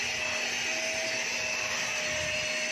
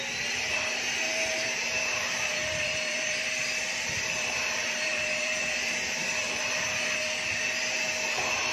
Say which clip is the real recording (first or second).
first